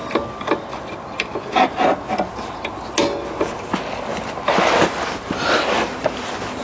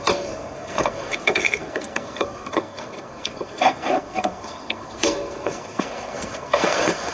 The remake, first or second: second